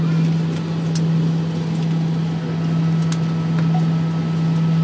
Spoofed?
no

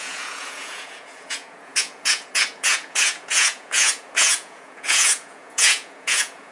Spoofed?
yes